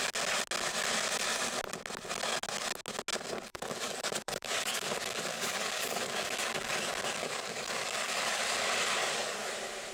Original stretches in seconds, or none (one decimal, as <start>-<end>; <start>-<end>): 0.0-3.5; 8.4-9.0; 9.5-9.9